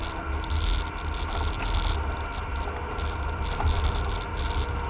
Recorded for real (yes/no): yes